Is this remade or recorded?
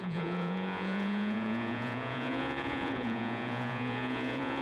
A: remade